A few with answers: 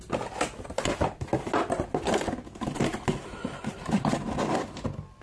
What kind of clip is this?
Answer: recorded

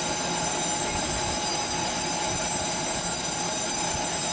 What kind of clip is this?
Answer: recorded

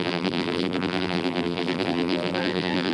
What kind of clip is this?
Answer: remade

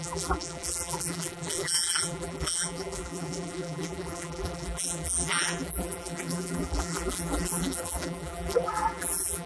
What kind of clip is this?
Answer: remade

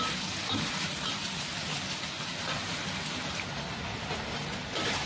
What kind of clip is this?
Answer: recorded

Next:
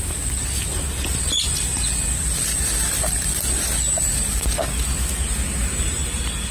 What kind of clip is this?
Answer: recorded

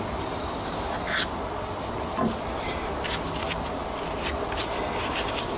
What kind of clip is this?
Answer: recorded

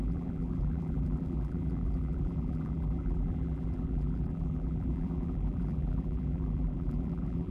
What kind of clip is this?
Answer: remade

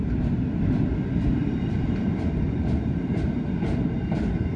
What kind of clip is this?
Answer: remade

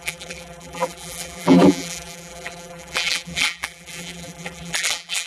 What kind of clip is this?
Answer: remade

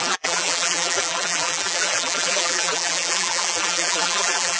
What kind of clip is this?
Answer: remade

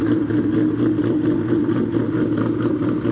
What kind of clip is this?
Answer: recorded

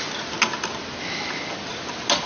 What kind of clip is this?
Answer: recorded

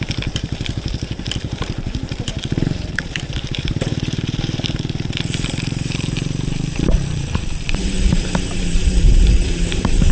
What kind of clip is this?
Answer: remade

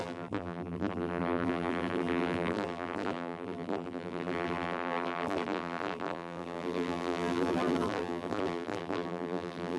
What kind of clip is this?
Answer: remade